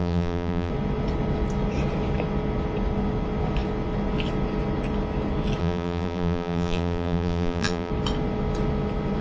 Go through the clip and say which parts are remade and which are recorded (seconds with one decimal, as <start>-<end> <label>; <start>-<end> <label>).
0.0-0.7 remade; 0.7-5.6 recorded; 5.6-7.9 remade; 7.9-9.2 recorded